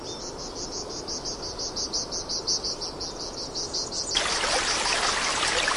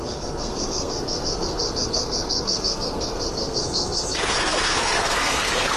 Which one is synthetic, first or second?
second